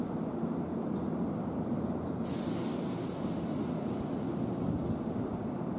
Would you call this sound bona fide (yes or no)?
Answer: yes